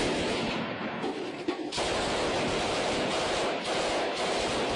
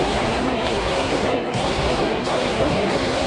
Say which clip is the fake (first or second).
second